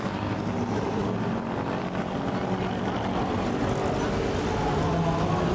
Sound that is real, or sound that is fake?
real